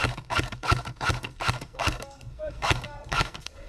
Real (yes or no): no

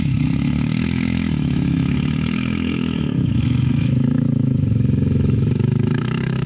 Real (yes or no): no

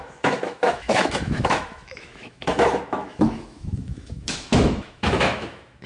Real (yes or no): no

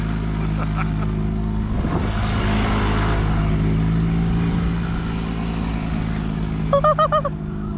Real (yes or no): yes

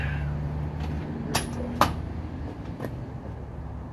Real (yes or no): yes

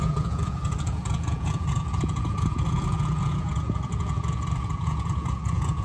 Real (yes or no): no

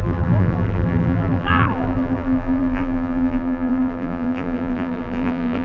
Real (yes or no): no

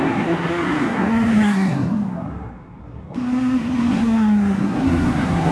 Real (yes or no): no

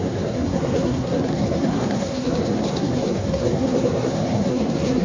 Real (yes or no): no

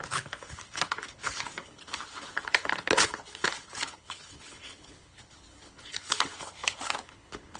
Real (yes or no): no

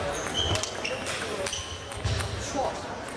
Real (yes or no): yes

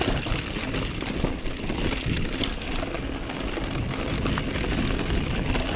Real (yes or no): yes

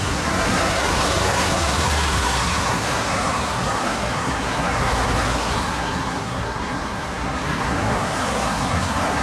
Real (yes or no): no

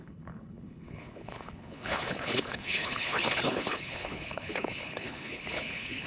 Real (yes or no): no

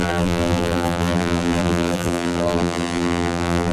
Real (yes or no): no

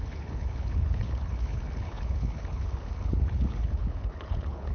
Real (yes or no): no